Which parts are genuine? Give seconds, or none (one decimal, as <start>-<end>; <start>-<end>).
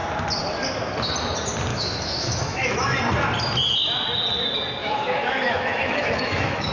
0.0-1.7; 3.0-4.8